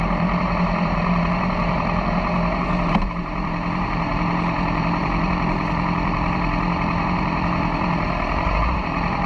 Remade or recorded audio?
remade